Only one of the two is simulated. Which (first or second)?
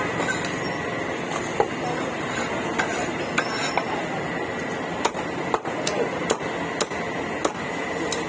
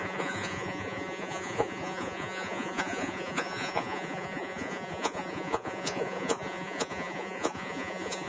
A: second